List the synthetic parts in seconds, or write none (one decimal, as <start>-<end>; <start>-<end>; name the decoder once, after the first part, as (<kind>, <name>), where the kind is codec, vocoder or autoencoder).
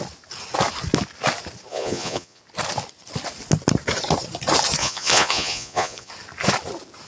1.7-2.4 (vocoder, Vocos); 4.8-6.1